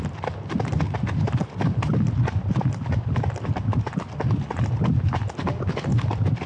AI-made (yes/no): no